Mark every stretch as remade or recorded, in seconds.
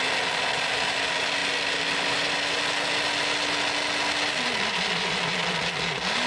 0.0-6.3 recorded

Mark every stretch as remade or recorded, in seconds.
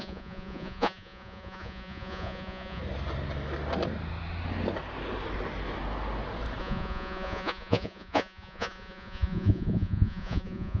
0.0-2.8 remade; 2.8-6.6 recorded; 6.6-10.8 remade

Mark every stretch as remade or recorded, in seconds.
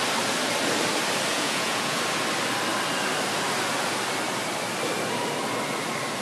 0.0-1.3 recorded; 1.3-2.0 remade; 2.0-6.2 recorded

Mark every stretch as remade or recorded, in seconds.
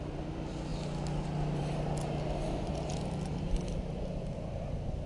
0.0-5.1 recorded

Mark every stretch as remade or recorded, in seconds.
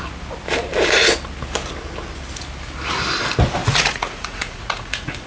0.0-3.6 recorded; 3.6-5.3 remade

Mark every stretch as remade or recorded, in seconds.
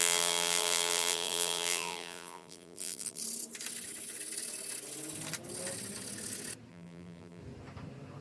0.0-3.2 remade; 3.2-6.7 recorded; 6.7-7.4 remade; 7.4-8.2 recorded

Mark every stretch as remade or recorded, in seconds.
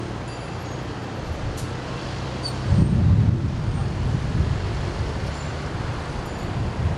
0.0-1.0 recorded; 1.0-2.4 remade; 2.4-3.8 recorded; 3.8-6.0 remade; 6.0-7.0 recorded